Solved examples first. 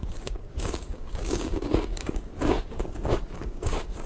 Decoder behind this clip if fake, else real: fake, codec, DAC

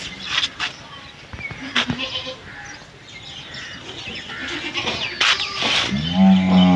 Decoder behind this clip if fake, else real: real